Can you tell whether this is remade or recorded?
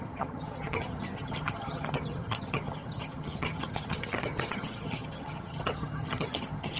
remade